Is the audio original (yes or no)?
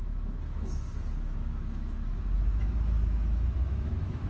no